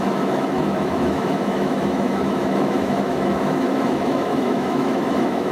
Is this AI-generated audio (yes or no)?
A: yes